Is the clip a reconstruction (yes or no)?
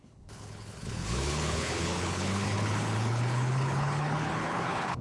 yes